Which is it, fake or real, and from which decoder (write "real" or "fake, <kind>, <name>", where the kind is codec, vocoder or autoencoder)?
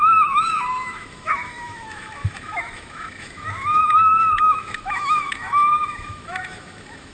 fake, autoencoder, DAC-VAE